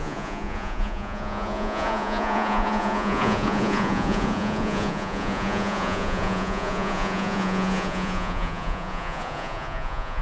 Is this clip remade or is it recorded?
remade